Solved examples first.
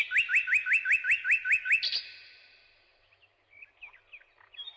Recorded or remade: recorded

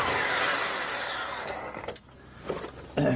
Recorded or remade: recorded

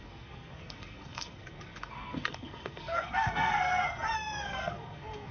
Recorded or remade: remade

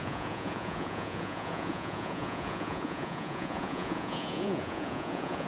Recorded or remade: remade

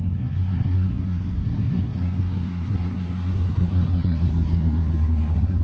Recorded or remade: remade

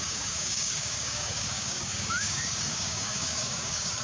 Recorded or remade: remade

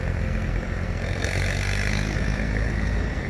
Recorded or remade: remade